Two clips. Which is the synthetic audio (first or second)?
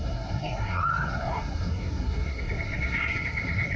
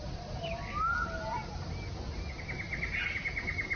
first